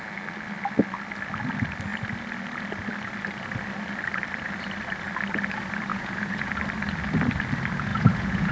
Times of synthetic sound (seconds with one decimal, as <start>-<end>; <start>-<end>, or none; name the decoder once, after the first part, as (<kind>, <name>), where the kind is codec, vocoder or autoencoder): 5.9-6.5 (vocoder, Vocos); 7.9-8.5